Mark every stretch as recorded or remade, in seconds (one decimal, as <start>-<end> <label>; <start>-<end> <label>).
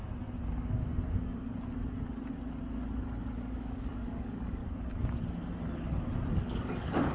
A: 0.0-3.4 recorded; 3.4-4.6 remade; 4.6-6.3 recorded; 6.3-7.1 remade